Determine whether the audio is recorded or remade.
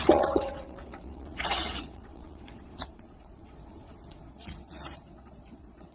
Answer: remade